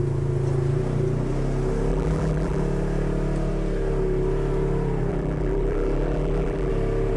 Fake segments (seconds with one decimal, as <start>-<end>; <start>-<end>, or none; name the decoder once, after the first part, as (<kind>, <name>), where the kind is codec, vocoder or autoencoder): 1.9-2.6 (vocoder, BigVGAN v2); 5.1-6.7